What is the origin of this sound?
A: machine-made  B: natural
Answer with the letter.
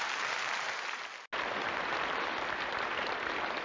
B